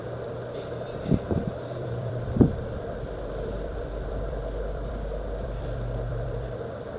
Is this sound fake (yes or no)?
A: yes